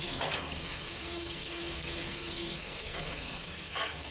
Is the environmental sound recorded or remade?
remade